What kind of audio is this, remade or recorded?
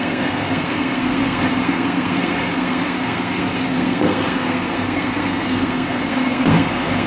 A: remade